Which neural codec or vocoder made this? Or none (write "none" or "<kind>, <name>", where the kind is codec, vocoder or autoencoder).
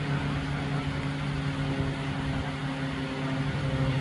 none